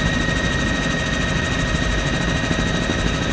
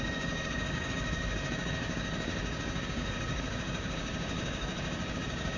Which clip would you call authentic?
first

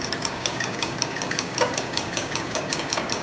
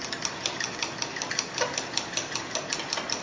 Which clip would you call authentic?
second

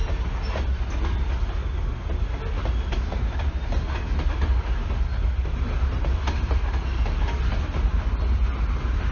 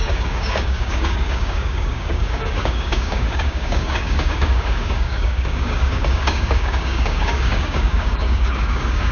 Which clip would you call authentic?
first